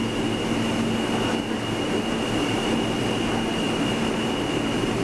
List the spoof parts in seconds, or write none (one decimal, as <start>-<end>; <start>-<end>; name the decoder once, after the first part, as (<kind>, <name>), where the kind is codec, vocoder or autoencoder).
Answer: none